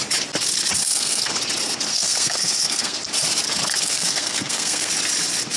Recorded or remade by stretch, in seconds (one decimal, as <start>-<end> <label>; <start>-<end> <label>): 0.0-0.8 recorded; 0.8-1.3 remade; 1.3-1.9 recorded; 1.9-3.0 remade; 3.0-3.8 recorded; 3.8-4.9 remade; 4.9-5.6 recorded